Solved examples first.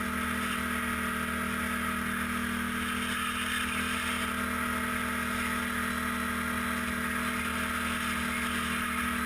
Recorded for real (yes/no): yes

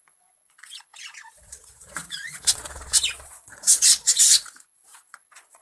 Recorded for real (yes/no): no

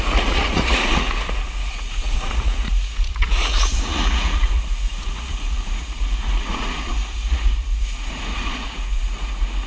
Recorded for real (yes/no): no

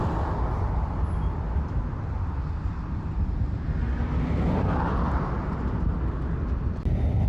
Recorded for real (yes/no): yes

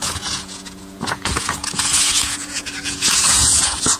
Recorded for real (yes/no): no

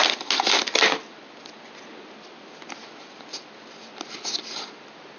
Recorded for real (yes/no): yes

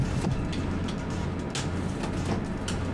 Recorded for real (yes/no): yes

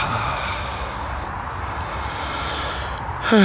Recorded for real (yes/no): yes